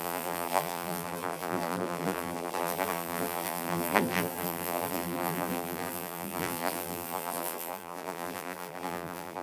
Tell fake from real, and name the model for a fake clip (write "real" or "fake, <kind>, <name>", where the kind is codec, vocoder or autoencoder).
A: fake, vocoder, BigVGAN v2